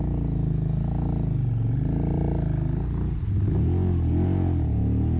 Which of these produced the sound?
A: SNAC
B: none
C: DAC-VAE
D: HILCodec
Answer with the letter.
B